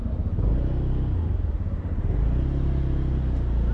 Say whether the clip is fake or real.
real